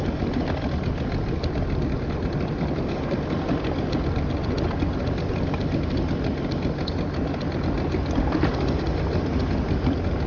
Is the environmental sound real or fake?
real